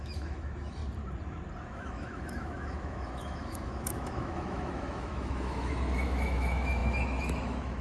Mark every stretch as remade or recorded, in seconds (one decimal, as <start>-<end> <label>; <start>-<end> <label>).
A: 0.0-0.8 remade; 0.8-1.6 recorded; 1.6-7.8 remade